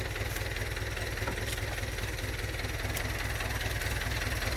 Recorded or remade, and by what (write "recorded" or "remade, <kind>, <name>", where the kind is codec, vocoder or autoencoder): recorded